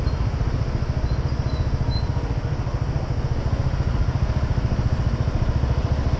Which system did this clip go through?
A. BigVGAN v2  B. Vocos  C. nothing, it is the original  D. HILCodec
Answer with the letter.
C